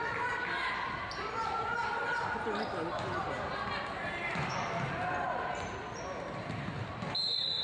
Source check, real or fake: real